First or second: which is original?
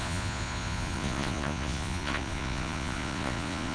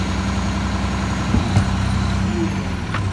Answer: second